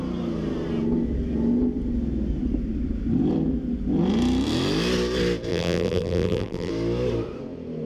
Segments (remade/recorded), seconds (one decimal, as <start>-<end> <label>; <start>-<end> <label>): 0.0-5.5 recorded; 5.5-6.7 remade; 6.7-7.8 recorded